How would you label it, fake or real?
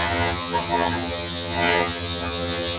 fake